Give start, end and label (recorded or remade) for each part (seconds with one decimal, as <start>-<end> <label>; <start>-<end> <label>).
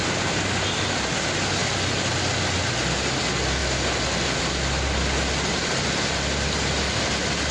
0.0-7.5 recorded